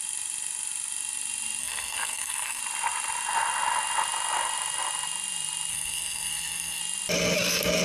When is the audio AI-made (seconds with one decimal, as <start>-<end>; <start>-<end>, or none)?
1.6-2.6; 5.7-6.8